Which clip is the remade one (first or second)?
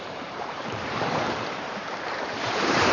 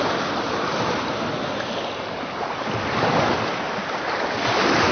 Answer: first